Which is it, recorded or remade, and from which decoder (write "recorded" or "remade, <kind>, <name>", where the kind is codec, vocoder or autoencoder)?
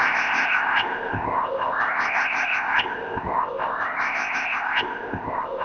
remade, codec, ZipCodec